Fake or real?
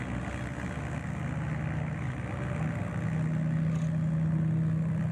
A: real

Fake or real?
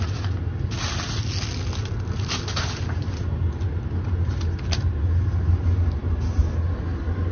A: real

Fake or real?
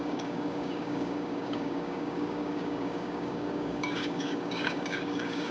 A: fake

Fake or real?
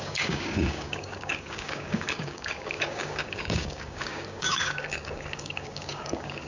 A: fake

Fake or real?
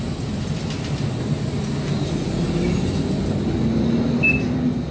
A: real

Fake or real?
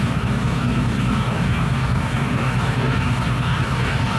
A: fake